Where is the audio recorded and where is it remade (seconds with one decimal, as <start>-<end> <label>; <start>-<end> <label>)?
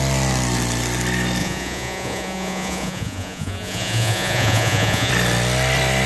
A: 0.0-1.4 recorded; 1.4-5.1 remade; 5.1-6.1 recorded